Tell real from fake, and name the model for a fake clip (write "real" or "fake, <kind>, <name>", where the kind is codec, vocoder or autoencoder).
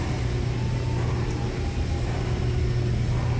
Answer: real